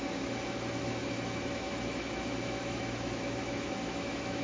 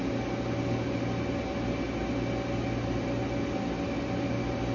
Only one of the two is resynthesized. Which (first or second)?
first